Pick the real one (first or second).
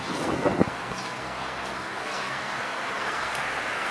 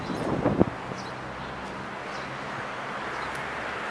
second